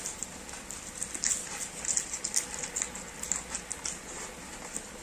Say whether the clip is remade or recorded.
recorded